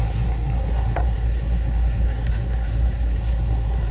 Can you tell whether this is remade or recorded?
remade